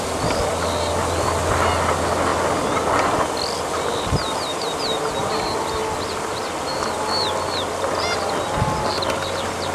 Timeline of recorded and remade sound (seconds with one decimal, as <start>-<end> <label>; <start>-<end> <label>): 0.0-9.7 recorded